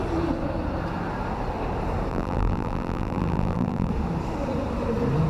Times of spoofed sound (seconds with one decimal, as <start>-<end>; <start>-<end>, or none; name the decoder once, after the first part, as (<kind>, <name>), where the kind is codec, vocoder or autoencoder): 2.1-3.9 (vocoder, BigVGAN v2)